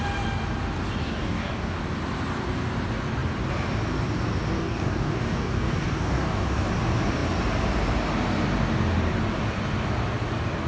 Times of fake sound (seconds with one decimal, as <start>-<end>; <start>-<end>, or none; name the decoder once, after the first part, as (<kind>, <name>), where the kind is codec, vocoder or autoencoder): 1.0-1.8 (codec, DAC); 4.5-6.7